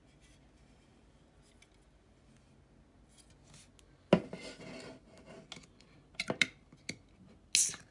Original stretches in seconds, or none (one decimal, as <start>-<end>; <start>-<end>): 0.0-7.9